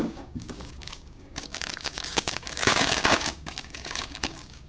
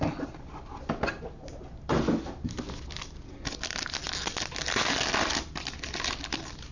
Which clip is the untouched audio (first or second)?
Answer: second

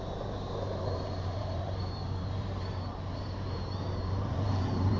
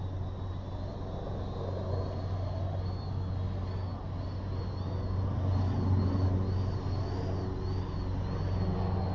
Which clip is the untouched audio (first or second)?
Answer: second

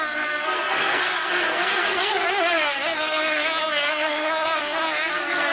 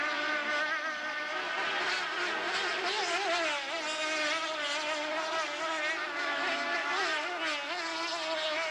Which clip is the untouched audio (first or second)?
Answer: second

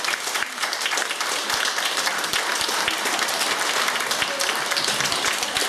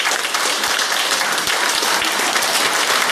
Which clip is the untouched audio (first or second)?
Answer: first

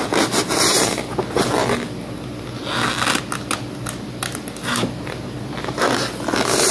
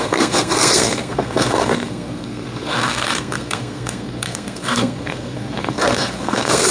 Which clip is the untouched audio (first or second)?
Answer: first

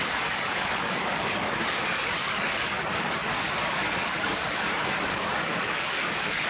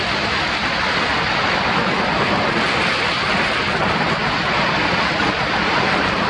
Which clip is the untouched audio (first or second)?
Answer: second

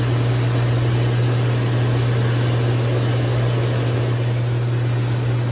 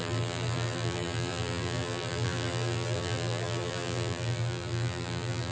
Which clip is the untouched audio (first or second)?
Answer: first